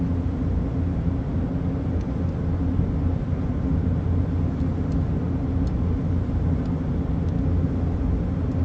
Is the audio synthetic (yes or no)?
no